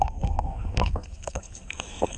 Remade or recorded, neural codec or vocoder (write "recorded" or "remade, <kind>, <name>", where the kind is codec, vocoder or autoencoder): remade, codec, SNAC